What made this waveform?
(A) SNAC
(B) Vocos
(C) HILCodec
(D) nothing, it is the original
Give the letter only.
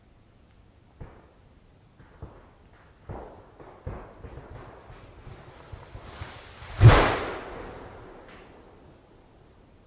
D